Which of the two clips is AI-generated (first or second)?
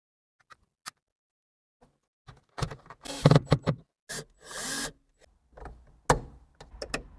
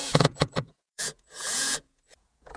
second